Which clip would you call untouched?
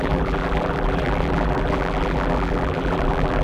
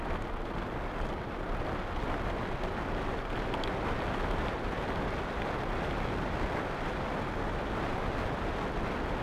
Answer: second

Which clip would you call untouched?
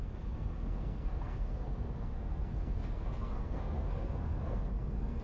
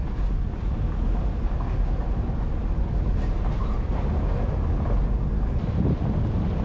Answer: second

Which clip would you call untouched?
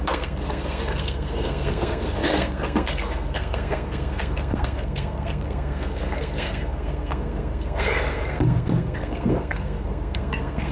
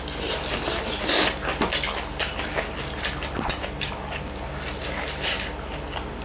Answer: second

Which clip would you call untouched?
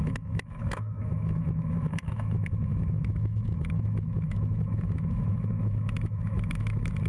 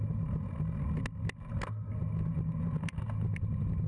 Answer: second